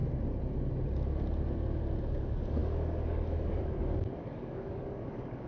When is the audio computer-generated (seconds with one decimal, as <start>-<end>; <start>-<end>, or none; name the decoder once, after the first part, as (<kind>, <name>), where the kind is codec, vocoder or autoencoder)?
2.1-5.5 (codec, DAC)

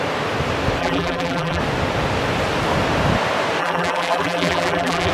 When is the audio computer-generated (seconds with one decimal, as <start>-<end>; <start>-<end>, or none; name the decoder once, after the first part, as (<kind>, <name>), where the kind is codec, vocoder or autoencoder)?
0.8-1.6 (vocoder, BigVGAN v2); 3.6-5.1

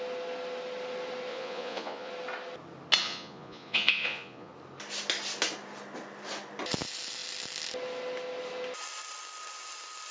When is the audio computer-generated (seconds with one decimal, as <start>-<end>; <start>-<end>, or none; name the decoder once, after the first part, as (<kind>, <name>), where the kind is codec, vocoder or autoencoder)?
1.3-2.1 (vocoder, Vocos); 3.0-4.5

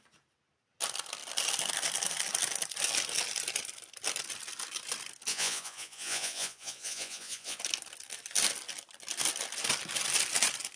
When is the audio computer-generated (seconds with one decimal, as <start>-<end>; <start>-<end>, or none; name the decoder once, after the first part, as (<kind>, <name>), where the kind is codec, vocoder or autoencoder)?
5.3-7.6 (vocoder, Vocos)

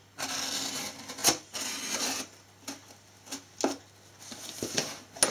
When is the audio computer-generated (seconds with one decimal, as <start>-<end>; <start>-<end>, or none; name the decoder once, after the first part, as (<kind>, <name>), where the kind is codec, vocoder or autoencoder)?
none

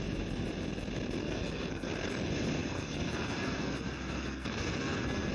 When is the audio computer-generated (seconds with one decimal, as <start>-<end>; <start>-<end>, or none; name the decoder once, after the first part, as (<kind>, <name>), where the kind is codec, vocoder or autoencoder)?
1.2-1.9 (codec, SNAC); 2.6-5.3

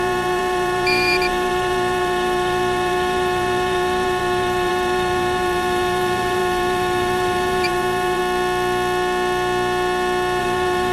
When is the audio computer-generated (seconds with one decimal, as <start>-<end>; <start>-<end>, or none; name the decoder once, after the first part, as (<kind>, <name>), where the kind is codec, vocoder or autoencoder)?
0.0-8.2 (vocoder, BigVGAN v2); 10.4-10.9